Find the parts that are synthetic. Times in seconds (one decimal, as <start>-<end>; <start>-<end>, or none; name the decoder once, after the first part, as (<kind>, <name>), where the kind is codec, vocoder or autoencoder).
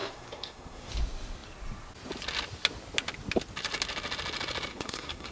0.0-0.9 (codec, SNAC); 4.7-5.3